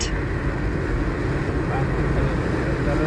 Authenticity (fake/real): real